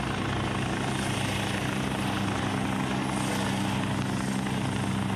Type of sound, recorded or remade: recorded